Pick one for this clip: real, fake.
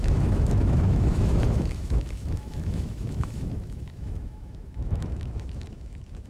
fake